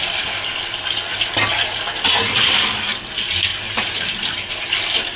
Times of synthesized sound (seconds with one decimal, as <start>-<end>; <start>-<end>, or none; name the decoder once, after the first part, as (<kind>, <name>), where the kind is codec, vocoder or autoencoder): 3.5-4.5 (vocoder, BigVGAN v2)